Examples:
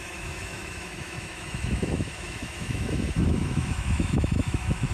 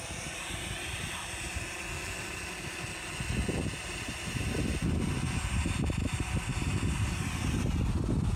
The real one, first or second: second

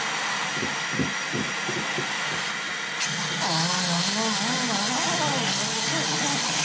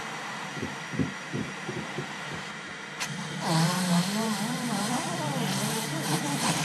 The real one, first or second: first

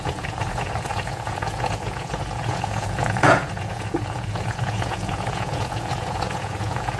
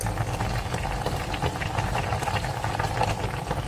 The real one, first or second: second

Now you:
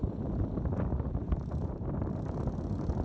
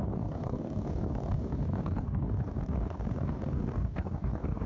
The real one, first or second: first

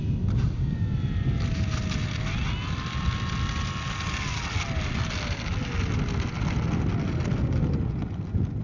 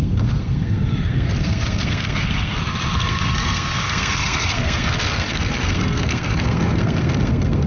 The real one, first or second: first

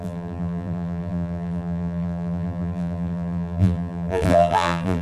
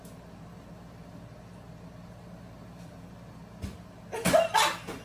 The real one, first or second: second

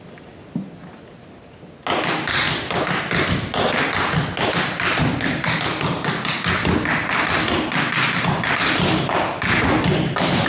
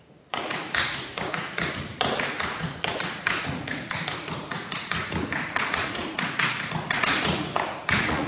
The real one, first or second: first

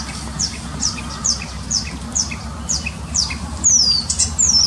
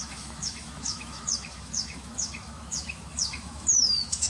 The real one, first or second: first